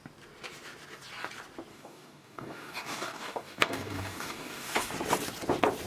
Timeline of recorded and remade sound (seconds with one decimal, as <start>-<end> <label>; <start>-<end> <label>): 0.0-1.7 recorded; 1.7-4.9 remade; 4.9-5.9 recorded